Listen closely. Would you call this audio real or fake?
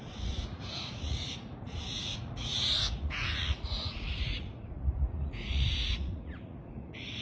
fake